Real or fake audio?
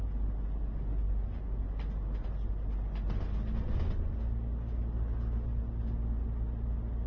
real